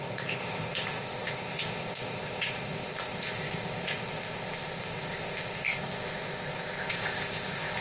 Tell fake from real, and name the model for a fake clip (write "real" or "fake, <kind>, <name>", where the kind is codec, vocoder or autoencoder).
fake, codec, ZipCodec